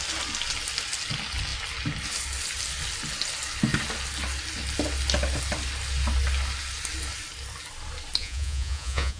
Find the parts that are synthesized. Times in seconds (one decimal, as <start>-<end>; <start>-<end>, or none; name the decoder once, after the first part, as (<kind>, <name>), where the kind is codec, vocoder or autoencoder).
8.2-9.2 (vocoder, Vocos)